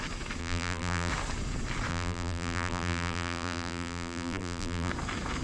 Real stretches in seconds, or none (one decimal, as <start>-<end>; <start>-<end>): 0.0-0.4; 1.1-1.9; 4.9-5.4